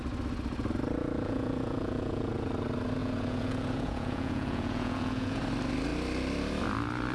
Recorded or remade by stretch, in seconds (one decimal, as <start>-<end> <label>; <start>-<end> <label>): 0.0-1.0 recorded; 1.0-2.5 remade; 2.5-3.0 recorded; 3.0-5.4 remade; 5.4-7.1 recorded